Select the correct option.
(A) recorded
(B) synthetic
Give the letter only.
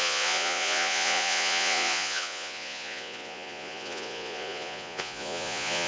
B